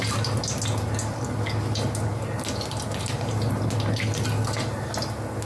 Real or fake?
real